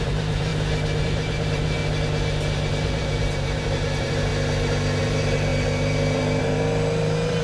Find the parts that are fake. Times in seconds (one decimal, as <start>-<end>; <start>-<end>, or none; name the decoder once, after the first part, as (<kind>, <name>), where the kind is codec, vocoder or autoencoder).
0.0-0.5 (vocoder, BigVGAN v2); 1.0-1.8; 2.7-4.3; 5.0-7.4